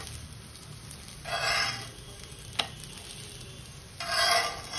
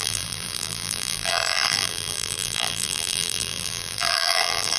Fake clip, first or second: second